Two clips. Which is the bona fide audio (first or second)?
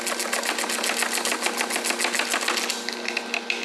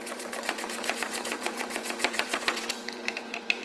first